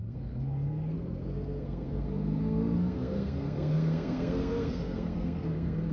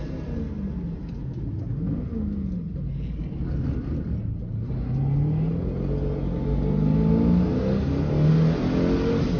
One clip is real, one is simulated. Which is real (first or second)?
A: second